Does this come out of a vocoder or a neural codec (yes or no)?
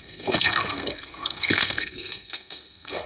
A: yes